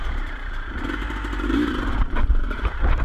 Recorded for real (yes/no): no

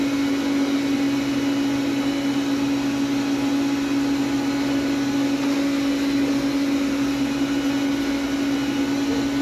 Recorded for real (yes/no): yes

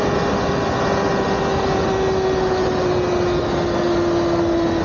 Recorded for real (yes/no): yes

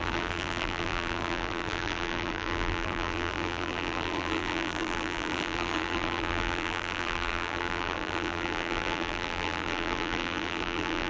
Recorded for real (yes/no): no